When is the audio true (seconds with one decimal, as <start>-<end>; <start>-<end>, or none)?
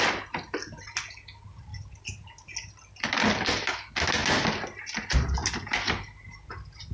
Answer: 0.0-6.9